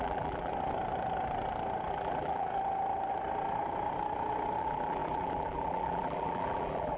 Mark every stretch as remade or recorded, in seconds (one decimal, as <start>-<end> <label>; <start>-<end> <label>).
0.0-0.5 remade; 0.5-1.9 recorded; 1.9-2.5 remade; 2.5-4.6 recorded; 4.6-7.0 remade